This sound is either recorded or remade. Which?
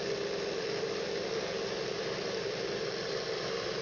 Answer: recorded